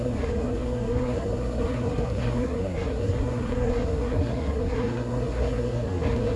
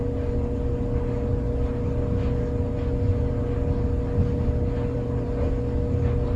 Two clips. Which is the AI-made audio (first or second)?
first